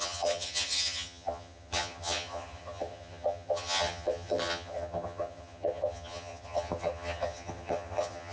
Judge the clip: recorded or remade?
remade